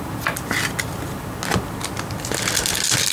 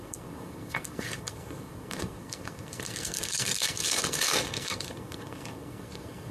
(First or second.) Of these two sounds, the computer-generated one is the second